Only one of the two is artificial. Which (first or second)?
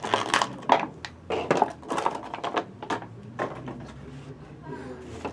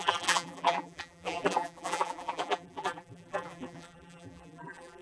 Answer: second